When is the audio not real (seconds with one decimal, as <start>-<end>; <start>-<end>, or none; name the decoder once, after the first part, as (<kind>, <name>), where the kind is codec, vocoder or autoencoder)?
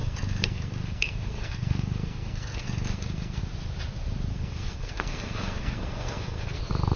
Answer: 0.0-3.4 (codec, SNAC); 4.3-6.6